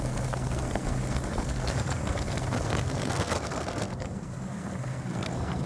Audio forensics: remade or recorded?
remade